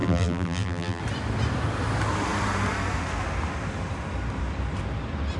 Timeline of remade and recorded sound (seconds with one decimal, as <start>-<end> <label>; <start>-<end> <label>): 0.0-1.0 remade; 1.0-5.4 recorded

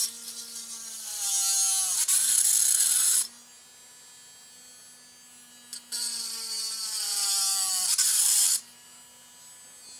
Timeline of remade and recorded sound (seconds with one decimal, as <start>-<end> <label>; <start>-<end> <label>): 0.0-7.5 recorded; 7.5-8.6 remade; 8.6-10.0 recorded